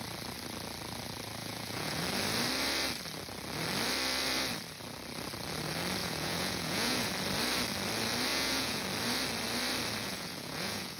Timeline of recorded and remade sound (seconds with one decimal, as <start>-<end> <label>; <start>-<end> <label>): 0.0-1.4 recorded; 1.4-2.0 remade; 2.0-6.0 recorded; 6.0-7.1 remade; 7.1-8.3 recorded; 8.3-8.8 remade; 8.8-10.0 recorded; 10.0-11.0 remade